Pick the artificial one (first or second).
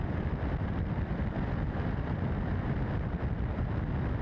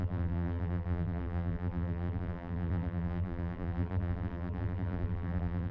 second